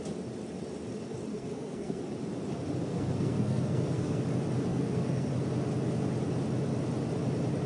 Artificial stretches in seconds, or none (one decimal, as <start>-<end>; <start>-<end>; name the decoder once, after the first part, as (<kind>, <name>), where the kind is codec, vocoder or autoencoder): 1.3-2.0 (codec, SNAC); 2.9-4.2; 4.7-5.3